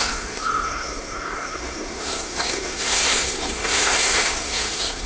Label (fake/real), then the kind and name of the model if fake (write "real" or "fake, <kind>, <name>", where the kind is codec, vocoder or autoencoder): fake, codec, SNAC